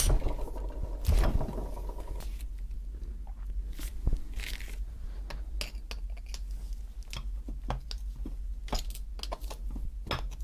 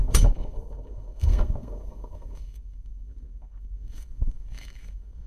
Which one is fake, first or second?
second